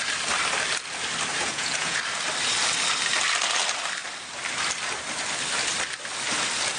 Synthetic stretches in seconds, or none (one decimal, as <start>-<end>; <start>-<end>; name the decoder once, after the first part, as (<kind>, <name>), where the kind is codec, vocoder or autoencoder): 1.4-2.0 (vocoder, Vocos)